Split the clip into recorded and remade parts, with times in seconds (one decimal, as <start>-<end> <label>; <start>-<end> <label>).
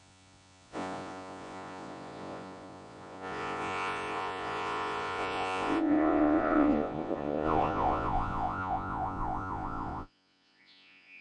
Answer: 0.0-11.2 remade